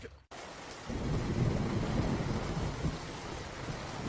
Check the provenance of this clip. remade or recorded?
recorded